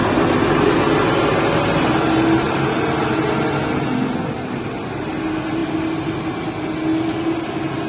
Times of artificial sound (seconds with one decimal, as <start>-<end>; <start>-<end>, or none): none